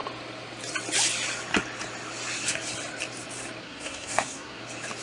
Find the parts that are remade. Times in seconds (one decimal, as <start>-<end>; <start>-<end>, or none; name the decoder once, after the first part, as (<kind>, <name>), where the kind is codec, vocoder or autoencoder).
3.6-4.6 (codec, SNAC)